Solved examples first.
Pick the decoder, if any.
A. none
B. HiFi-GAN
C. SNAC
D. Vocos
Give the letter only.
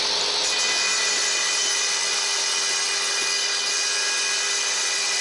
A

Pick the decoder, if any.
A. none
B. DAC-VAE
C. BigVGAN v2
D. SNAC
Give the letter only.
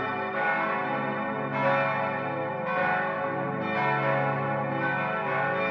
A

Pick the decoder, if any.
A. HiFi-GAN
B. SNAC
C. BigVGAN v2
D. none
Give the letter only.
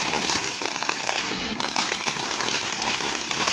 B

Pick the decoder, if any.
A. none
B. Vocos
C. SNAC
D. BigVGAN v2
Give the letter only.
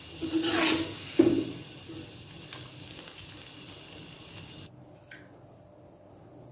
A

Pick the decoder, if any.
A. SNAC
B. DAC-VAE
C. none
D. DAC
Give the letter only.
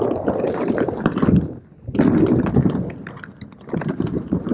C